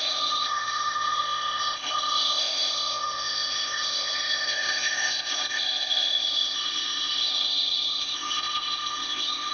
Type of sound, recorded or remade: remade